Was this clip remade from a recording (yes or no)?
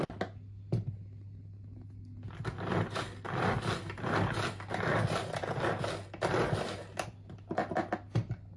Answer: no